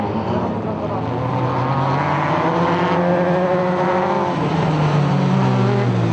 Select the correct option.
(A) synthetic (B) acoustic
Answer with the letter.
B